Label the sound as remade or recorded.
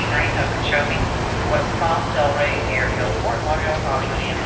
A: recorded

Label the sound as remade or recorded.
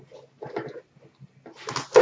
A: recorded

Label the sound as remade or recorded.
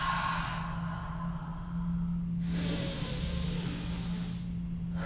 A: recorded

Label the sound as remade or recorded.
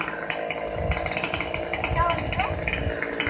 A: recorded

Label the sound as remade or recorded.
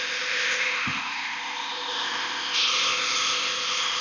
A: remade